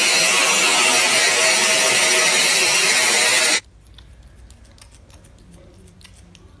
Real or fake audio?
real